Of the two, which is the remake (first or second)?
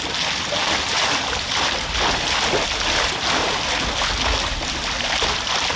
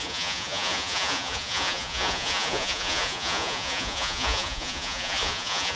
second